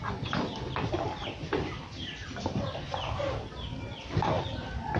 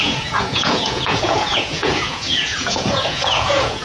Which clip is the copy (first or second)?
second